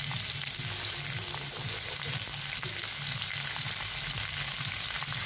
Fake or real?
real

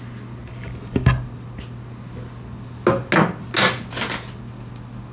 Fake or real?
real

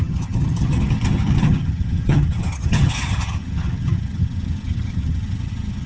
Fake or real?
fake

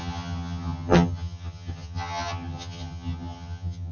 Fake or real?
fake